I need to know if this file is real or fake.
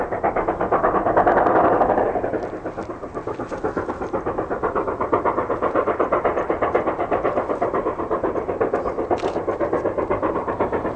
real